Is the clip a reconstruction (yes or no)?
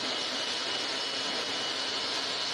no